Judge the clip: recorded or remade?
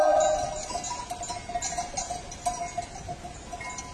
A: recorded